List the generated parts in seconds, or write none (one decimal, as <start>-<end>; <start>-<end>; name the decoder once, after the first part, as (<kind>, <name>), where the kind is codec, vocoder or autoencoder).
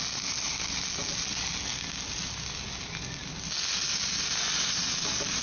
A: none